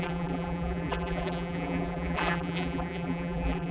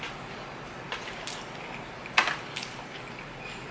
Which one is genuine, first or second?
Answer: second